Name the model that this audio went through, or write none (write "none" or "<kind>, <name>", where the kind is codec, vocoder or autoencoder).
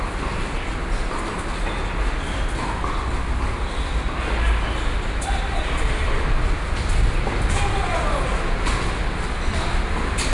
none